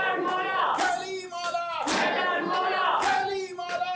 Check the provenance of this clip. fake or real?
real